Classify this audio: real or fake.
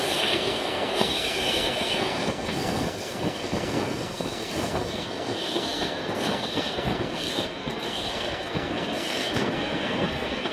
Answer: fake